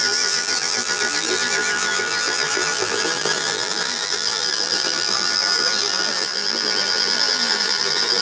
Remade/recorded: remade